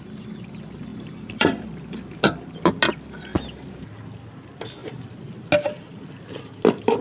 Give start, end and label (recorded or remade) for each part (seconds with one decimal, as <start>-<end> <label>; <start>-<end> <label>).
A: 0.0-0.9 recorded; 0.9-1.5 remade; 1.5-7.0 recorded